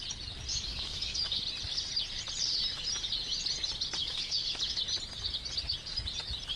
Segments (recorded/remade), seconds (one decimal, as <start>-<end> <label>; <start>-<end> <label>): 0.0-0.5 recorded; 0.5-1.4 remade; 1.4-4.0 recorded; 4.0-4.6 remade; 4.6-6.6 recorded